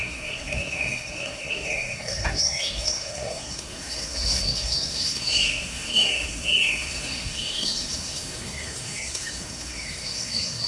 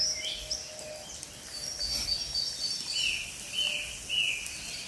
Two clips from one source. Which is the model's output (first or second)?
first